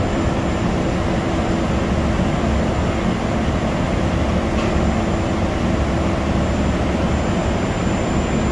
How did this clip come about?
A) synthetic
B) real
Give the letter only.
B